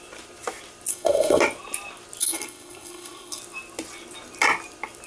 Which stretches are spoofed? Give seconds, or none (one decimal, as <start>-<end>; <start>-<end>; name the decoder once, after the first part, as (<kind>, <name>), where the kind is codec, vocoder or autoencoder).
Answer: 0.9-1.4 (codec, SNAC); 2.2-3.4